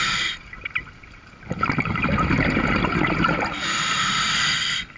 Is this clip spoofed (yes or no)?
no